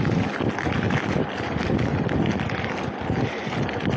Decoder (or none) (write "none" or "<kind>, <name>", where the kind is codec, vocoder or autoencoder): none